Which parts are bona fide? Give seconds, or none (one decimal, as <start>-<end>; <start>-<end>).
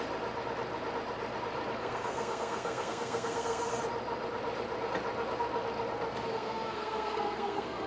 0.0-1.8; 3.8-6.3